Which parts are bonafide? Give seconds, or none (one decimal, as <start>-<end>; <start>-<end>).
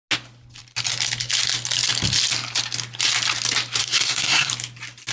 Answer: 0.0-3.8; 4.5-5.1